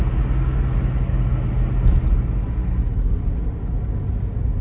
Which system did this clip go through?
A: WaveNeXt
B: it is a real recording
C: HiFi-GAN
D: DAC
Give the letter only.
B